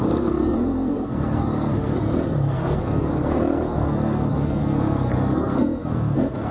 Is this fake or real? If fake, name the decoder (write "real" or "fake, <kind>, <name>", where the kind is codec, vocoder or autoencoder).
fake, codec, SNAC